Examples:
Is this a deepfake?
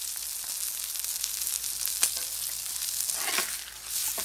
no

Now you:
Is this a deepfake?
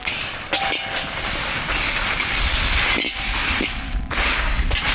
no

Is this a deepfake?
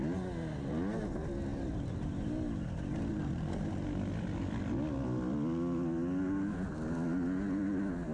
no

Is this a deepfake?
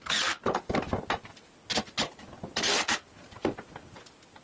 no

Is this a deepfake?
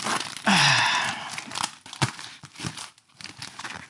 no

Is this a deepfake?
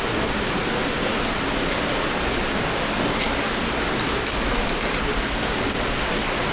no